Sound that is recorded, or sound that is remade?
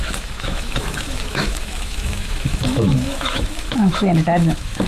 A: remade